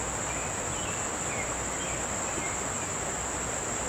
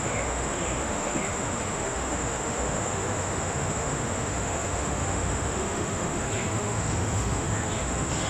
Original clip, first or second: first